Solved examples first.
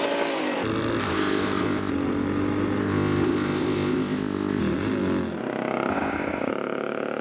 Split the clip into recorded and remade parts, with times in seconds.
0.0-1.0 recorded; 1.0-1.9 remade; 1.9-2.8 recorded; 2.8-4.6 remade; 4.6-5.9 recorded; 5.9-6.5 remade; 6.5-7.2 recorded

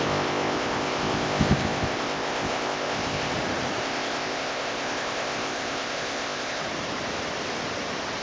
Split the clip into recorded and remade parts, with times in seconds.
0.0-3.3 remade; 3.3-3.8 recorded; 3.8-6.6 remade; 6.6-8.2 recorded

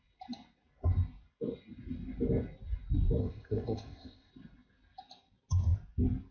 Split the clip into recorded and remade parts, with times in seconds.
0.0-3.2 recorded; 3.2-4.3 remade; 4.3-6.3 recorded